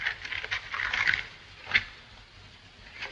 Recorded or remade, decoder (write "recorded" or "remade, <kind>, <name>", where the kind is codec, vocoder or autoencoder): recorded